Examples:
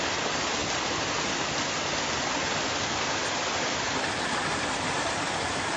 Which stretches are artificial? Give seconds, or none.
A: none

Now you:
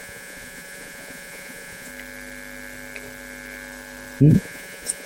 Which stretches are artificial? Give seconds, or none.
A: 0.0-1.9 (vocoder, Vocos); 4.3-5.1

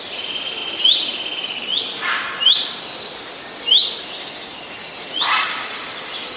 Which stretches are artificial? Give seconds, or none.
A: none

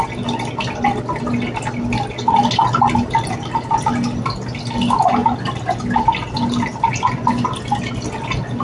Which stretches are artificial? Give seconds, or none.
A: none